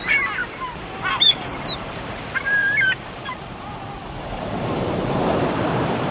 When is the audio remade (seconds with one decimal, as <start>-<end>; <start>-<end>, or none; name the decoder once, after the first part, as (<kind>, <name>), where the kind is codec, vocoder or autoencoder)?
0.0-6.1 (vocoder, BigVGAN v2)